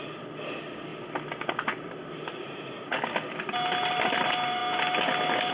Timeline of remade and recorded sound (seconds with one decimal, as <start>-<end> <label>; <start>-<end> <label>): 0.0-2.3 recorded; 2.3-3.0 remade; 3.0-5.5 recorded